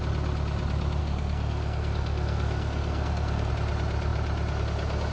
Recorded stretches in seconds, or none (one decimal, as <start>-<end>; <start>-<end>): 0.0-1.0; 3.5-5.1